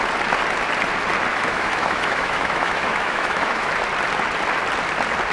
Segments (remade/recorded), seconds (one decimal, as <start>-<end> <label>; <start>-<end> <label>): 0.0-1.3 recorded; 1.3-3.7 remade; 3.7-5.3 recorded